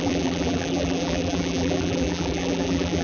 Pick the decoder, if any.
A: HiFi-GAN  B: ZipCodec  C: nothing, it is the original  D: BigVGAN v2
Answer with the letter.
D